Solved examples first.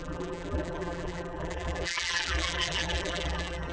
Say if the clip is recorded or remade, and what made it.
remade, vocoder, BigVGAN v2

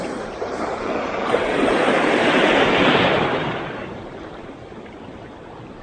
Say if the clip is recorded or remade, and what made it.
remade, vocoder, BigVGAN v2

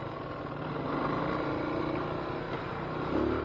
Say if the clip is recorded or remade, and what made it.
recorded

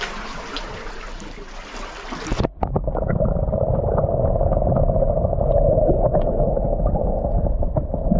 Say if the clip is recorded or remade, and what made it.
recorded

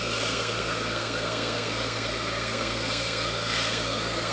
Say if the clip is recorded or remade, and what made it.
remade, codec, SNAC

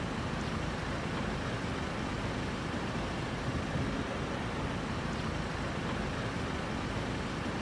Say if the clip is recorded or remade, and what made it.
recorded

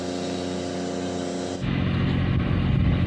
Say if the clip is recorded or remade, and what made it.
recorded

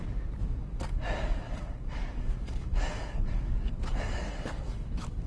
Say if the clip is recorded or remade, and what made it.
remade, codec, DAC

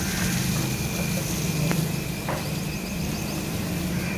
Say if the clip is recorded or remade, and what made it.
remade, vocoder, BigVGAN v2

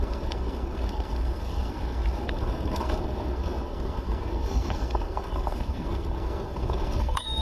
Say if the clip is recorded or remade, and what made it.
remade, codec, SNAC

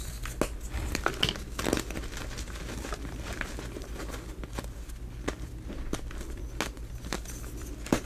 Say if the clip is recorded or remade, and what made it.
recorded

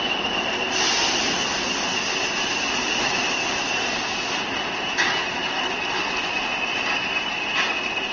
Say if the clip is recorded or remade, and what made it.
recorded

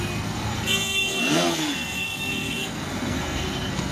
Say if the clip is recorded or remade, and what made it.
remade, codec, SNAC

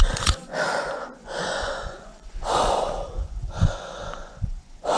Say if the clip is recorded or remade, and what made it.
remade, vocoder, Vocos